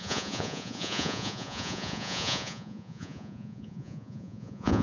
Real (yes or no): no